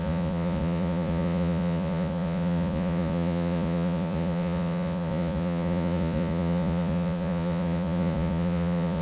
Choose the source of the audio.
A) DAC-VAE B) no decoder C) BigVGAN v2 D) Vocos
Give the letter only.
D